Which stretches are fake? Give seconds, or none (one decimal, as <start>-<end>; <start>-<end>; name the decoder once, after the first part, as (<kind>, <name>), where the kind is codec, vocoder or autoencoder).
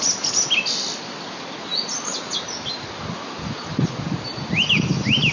none